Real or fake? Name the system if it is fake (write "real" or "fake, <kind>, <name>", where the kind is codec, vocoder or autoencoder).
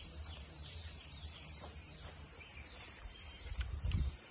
fake, vocoder, BigVGAN v2